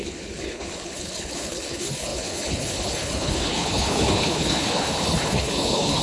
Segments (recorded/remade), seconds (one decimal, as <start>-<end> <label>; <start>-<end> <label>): 0.0-6.0 remade